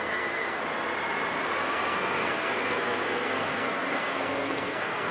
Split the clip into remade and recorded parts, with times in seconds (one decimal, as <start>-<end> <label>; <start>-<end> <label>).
0.0-0.6 remade; 0.6-1.7 recorded; 1.7-5.1 remade